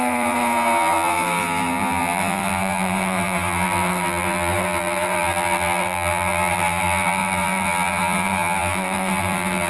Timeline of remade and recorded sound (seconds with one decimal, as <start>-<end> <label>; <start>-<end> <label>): 0.0-9.7 remade